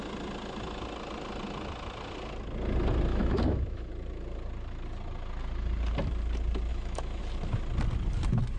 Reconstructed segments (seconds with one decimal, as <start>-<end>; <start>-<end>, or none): 3.1-3.9; 6.7-7.2